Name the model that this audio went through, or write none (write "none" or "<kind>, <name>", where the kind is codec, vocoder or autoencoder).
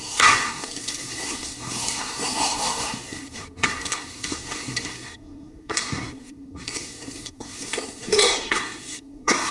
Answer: codec, SNAC